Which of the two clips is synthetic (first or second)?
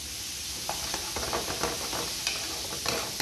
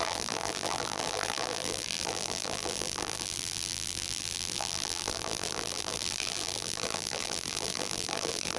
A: second